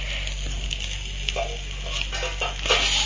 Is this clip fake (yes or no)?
no